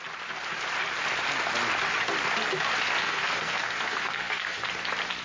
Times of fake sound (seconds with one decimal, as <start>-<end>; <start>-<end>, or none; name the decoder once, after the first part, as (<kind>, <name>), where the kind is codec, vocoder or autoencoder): 3.0-4.7 (codec, SNAC)